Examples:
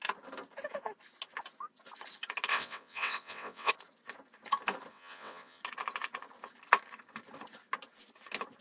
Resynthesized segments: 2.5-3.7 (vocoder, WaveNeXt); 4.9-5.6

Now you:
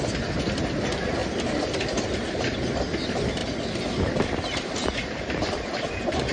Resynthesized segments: none

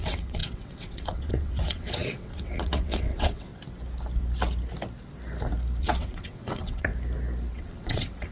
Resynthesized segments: 0.0-3.5 (vocoder, WaveNeXt); 5.8-6.9; 7.5-8.3

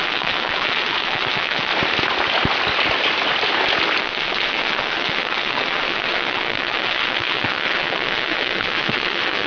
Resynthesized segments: 0.0-1.7 (vocoder, WaveNeXt); 4.0-9.5